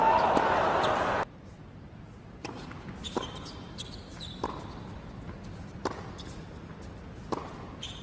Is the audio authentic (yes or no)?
yes